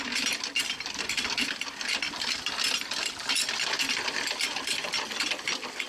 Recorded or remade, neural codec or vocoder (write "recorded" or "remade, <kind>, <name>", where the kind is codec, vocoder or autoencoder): recorded